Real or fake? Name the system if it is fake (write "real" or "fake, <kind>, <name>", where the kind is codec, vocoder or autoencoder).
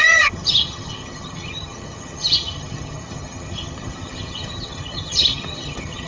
fake, vocoder, HiFi-GAN